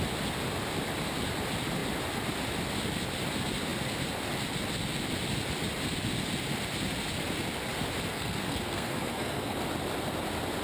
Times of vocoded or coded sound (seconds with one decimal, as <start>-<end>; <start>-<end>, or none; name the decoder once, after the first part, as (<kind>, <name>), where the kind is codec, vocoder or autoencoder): 8.1-9.6 (codec, SNAC)